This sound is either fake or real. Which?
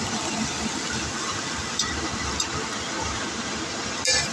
real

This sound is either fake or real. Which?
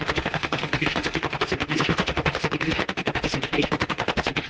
fake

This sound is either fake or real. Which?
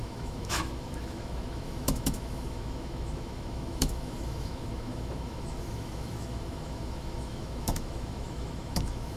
fake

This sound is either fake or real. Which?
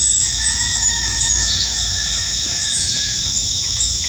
fake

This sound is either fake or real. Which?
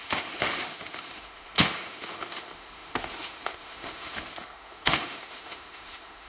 fake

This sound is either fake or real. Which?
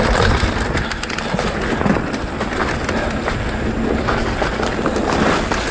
real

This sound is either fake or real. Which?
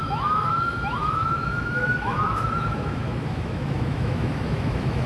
fake